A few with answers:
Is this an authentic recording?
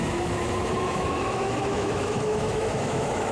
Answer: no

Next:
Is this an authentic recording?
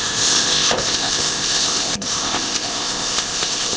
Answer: no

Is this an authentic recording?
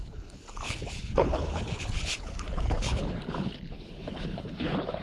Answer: no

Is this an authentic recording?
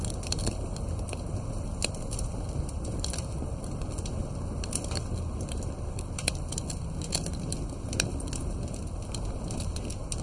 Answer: yes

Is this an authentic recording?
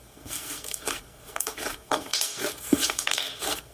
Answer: no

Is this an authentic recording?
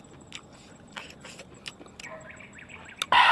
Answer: yes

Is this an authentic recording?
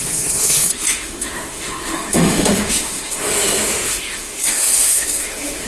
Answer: no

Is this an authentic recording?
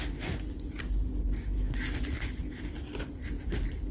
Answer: yes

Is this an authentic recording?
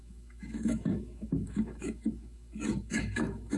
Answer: no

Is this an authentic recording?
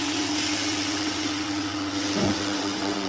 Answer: no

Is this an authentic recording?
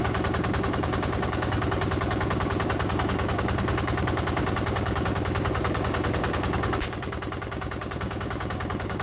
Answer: no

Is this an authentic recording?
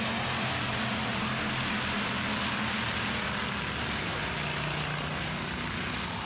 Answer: yes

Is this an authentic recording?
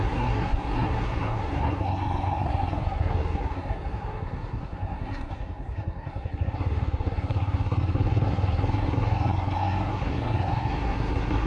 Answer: no